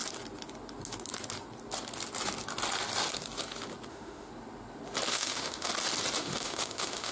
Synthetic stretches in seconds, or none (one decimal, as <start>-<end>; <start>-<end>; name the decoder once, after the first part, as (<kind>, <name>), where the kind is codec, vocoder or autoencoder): 3.9-4.3 (autoencoder, DAC-VAE); 5.1-5.7; 6.2-7.1

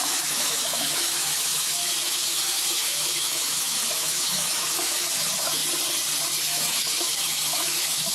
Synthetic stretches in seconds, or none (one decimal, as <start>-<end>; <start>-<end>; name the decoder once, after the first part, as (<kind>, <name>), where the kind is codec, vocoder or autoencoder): 0.0-5.6 (autoencoder, DAC-VAE); 6.4-8.1

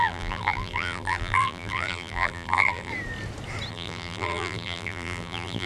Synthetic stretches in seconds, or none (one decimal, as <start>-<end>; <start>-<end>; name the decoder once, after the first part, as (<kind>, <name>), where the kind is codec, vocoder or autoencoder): 0.0-2.9 (vocoder, BigVGAN v2); 3.7-5.7

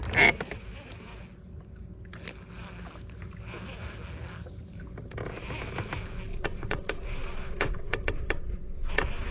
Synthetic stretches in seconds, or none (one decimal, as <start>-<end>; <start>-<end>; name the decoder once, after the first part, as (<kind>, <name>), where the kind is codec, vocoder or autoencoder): 6.3-9.3 (vocoder, Vocos)

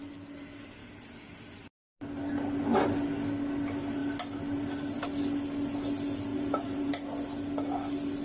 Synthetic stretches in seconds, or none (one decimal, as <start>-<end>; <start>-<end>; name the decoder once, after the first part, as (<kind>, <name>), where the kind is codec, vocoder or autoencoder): 0.8-1.3 (vocoder, Vocos); 6.3-6.9

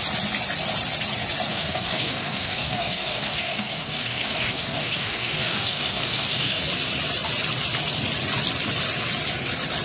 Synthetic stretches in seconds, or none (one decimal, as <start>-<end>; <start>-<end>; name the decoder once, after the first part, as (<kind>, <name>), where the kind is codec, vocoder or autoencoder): 1.5-6.6 (codec, DAC)

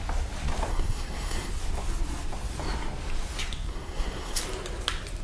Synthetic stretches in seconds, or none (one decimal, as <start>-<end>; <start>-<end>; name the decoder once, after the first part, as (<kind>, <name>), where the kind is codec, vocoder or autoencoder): 0.7-1.5 (codec, SNAC); 3.7-4.4